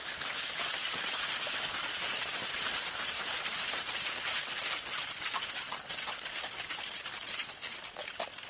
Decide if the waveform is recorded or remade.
recorded